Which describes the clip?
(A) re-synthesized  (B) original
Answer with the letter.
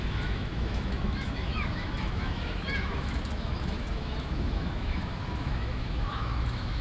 A